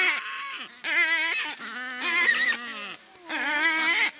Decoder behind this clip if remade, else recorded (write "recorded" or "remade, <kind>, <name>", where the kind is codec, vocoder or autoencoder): recorded